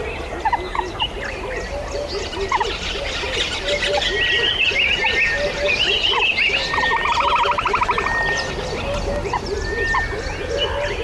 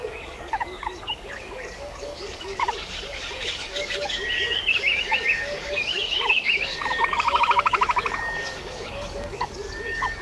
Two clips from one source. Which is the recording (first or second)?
first